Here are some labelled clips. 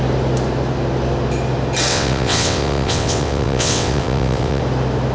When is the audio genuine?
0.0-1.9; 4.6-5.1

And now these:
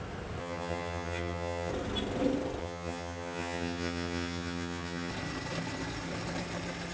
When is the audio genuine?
0.0-0.4; 1.7-2.6; 5.1-6.9

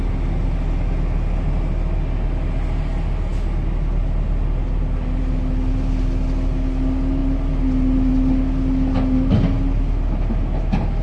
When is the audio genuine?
0.0-11.0